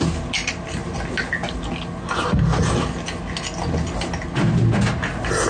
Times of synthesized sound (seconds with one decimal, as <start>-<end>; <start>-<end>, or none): none